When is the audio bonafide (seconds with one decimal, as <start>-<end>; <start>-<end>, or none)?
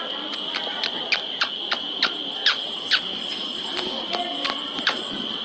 0.0-5.4